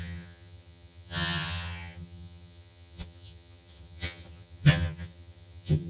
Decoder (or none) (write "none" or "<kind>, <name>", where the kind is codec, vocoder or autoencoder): vocoder, HiFi-GAN